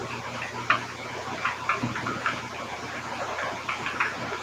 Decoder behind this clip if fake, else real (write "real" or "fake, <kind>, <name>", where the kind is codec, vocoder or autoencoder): real